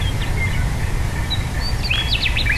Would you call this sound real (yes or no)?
yes